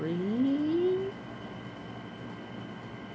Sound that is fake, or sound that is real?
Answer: real